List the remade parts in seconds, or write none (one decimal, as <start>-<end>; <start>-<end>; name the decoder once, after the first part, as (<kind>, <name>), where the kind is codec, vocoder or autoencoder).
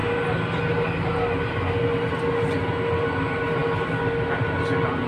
none